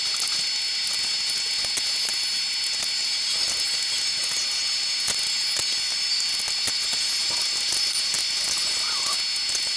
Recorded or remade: recorded